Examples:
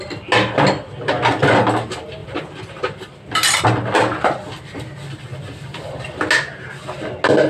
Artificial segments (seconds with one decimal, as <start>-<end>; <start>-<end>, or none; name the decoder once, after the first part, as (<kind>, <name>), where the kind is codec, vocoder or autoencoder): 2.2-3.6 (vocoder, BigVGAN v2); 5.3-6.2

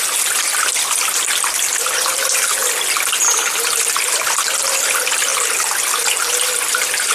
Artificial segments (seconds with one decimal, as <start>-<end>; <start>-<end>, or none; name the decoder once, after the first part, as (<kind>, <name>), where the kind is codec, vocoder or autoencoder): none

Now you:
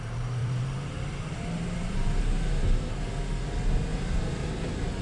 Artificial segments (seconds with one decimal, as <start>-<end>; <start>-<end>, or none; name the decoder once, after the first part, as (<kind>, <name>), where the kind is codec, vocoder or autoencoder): 0.4-2.9 (vocoder, BigVGAN v2); 3.9-4.5

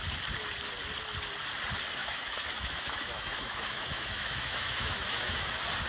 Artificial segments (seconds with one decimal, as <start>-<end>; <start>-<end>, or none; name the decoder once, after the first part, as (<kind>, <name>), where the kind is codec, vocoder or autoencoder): 2.0-5.5 (autoencoder, DAC-VAE)

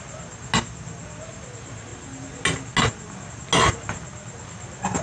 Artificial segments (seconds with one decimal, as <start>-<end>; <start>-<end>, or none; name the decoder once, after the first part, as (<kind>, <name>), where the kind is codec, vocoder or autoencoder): none

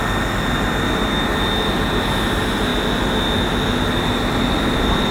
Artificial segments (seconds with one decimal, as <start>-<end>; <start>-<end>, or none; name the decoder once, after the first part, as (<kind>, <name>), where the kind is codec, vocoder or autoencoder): none